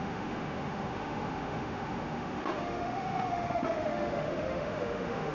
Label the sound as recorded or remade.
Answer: remade